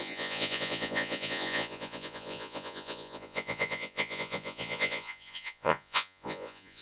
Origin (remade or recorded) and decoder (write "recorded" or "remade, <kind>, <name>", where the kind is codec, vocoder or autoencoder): remade, vocoder, Vocos